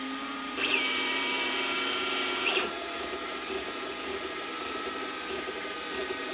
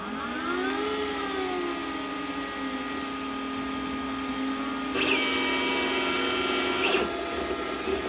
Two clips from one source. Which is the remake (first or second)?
first